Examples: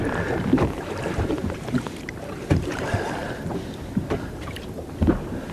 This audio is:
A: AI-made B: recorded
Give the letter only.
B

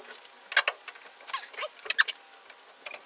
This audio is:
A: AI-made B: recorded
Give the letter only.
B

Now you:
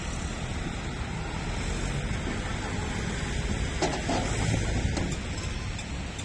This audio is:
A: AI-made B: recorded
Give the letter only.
B